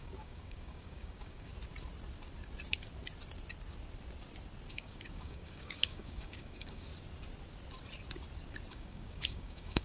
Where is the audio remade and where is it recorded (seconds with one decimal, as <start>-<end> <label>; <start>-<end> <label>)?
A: 0.0-1.5 remade; 1.5-4.7 recorded; 4.7-6.9 remade; 6.9-8.7 recorded; 8.7-9.8 remade